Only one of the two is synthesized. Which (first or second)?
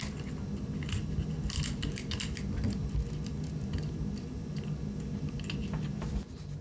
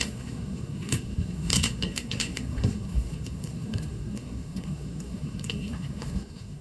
second